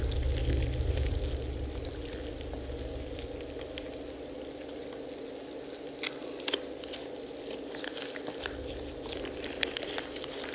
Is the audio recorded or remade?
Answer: recorded